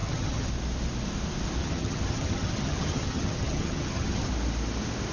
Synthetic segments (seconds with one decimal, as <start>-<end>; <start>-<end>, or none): 0.0-0.5; 1.6-4.3